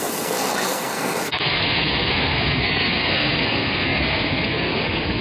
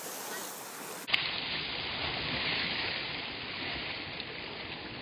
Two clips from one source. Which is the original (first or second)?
second